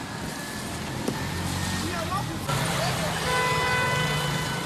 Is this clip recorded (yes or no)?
yes